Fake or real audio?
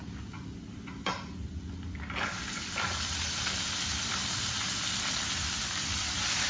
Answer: real